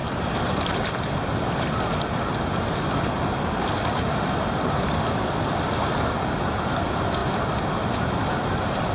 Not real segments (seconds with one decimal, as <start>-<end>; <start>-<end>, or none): none